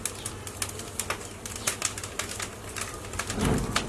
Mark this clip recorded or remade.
recorded